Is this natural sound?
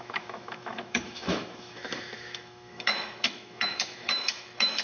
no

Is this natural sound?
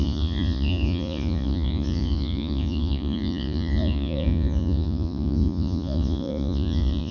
no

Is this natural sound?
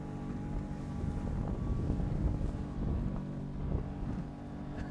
yes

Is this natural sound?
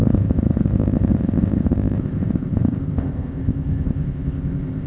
no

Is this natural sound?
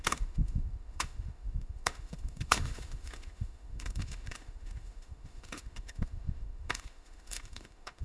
no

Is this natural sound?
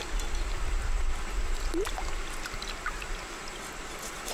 yes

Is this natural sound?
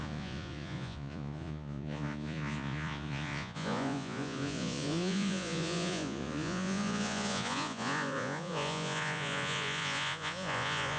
no